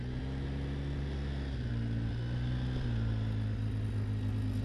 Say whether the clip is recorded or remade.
recorded